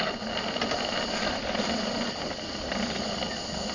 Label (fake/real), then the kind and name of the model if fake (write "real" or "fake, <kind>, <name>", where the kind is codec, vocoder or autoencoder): real